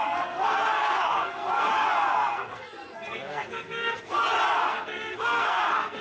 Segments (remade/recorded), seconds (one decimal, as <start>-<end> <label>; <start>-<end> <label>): 0.0-1.7 remade; 1.7-2.3 recorded; 2.3-4.2 remade; 4.2-4.7 recorded; 4.7-6.0 remade